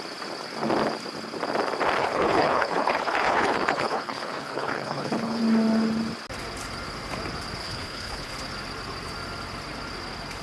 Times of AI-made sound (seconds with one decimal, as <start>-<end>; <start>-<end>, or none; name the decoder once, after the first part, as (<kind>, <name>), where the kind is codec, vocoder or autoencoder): 2.0-5.4 (codec, HILCodec); 7.6-8.3